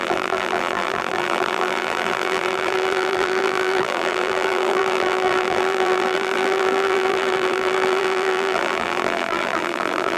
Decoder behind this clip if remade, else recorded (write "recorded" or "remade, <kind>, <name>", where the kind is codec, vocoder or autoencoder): remade, vocoder, BigVGAN v2